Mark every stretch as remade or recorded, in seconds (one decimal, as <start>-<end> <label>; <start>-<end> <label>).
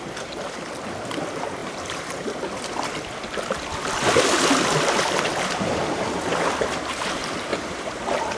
0.0-8.4 remade